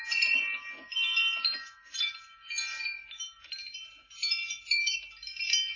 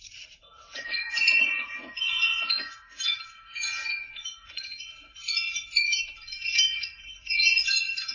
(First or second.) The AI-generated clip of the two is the second